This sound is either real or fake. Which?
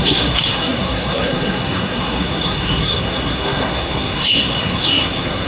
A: fake